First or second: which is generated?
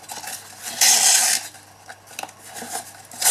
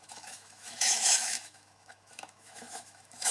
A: second